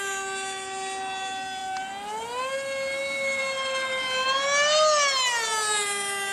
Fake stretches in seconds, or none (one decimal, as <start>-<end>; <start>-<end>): none